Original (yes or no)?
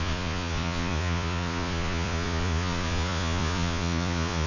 no